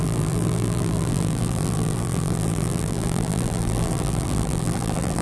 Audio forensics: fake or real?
fake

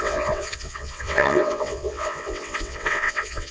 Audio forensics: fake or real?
fake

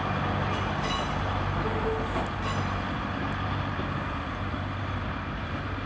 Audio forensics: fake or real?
real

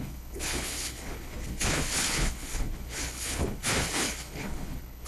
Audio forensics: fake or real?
fake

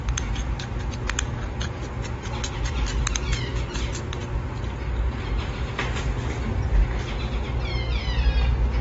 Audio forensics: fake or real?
real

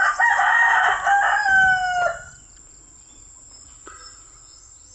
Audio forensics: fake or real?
real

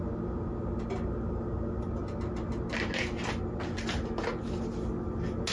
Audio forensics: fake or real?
real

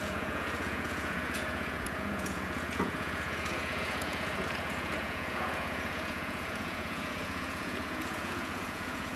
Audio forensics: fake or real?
fake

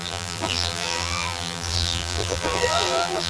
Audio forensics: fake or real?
fake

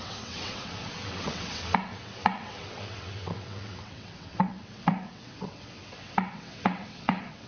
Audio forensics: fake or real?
fake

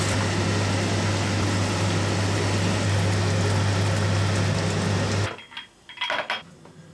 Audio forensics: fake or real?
real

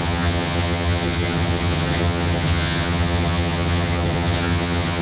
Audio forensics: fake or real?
fake